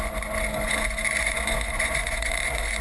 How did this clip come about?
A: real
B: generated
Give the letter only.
B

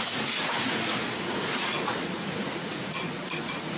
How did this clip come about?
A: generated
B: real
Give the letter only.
A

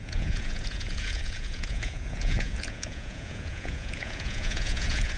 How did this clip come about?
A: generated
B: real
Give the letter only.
A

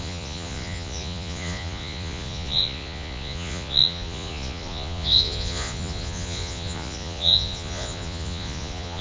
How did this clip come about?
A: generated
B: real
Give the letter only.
A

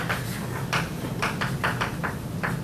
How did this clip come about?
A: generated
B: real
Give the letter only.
B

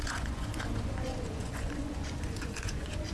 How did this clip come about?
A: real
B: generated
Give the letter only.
B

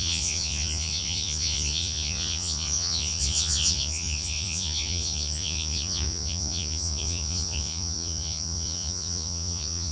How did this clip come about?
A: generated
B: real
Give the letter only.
A